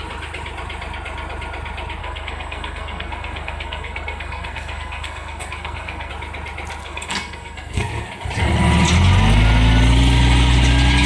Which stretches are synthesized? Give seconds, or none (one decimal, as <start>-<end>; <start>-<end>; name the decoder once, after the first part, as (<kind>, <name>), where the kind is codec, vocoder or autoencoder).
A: 2.0-6.1 (codec, SNAC); 6.8-8.1